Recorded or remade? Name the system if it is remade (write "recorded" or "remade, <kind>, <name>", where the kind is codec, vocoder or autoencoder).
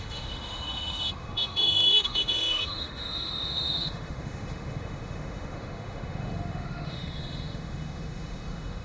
remade, autoencoder, DAC-VAE